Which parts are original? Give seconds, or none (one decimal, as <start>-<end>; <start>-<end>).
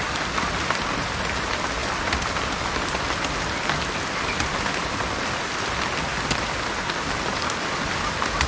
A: 0.0-8.5